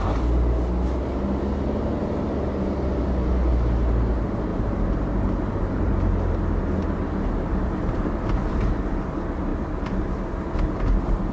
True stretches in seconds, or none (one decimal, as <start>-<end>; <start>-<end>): 0.0-1.5; 3.3-4.5; 5.8-11.3